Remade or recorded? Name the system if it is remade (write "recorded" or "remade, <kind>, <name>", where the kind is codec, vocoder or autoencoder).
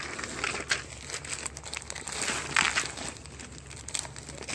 recorded